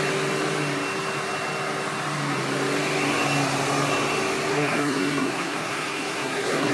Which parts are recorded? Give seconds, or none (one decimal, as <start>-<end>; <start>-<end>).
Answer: 0.0-4.5